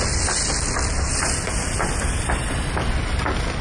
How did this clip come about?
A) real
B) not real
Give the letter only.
A